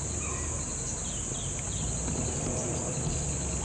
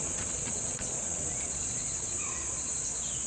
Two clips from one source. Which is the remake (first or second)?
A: second